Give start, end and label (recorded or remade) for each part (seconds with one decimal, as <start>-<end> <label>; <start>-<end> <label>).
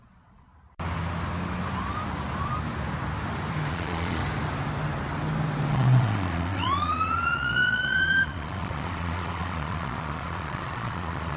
0.0-0.5 remade; 0.5-3.7 recorded; 3.7-4.2 remade; 4.2-5.7 recorded; 5.7-11.4 remade